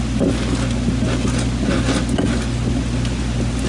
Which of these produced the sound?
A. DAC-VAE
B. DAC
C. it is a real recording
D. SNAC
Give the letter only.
C